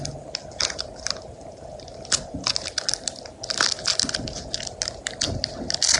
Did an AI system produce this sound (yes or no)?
no